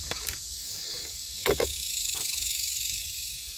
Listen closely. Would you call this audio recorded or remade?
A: remade